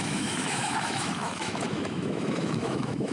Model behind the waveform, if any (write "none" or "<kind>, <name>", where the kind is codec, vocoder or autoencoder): autoencoder, DAC-VAE